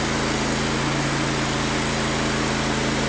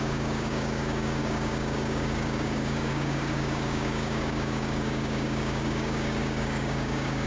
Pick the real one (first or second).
first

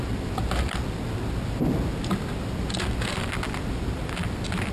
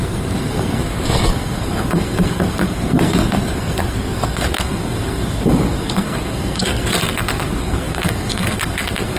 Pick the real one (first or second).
first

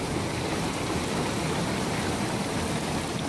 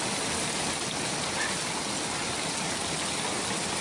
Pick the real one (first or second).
second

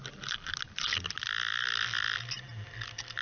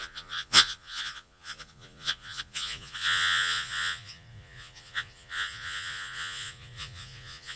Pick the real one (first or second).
first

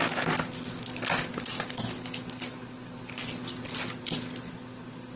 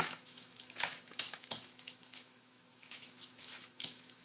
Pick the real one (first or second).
first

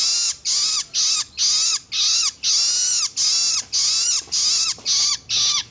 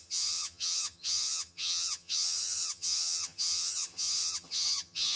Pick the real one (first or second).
first